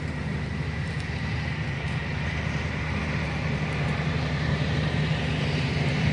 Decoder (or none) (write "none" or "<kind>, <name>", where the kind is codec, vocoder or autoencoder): vocoder, BigVGAN v2